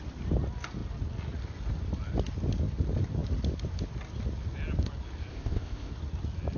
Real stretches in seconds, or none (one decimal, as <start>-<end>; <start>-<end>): 0.0-5.3; 5.9-6.6